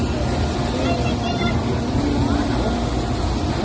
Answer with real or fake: real